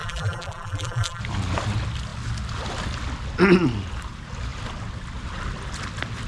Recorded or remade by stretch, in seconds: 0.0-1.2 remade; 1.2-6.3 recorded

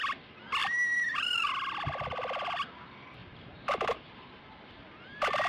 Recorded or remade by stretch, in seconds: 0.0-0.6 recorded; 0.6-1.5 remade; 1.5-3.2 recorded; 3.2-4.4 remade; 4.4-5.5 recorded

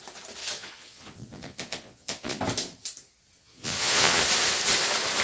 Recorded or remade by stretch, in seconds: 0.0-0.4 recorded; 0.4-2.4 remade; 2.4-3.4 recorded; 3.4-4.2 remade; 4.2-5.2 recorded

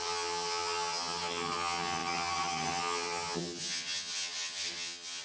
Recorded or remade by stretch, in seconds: 0.0-5.2 remade

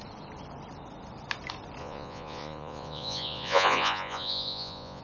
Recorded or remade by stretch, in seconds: 0.0-1.8 recorded; 1.8-5.0 remade